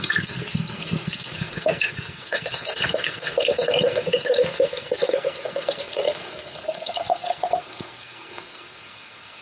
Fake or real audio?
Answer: fake